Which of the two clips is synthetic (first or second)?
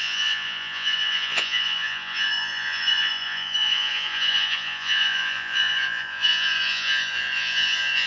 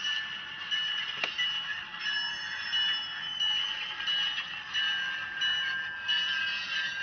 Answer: first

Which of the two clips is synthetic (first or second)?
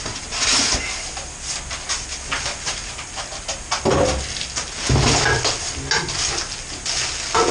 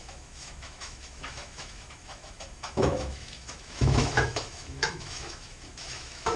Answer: second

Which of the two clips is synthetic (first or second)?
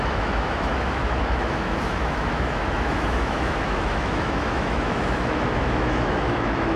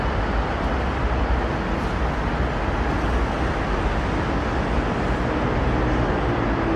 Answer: first